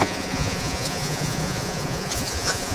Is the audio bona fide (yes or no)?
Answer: no